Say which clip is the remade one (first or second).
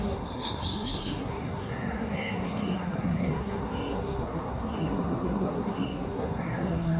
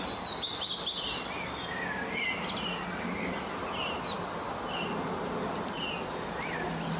first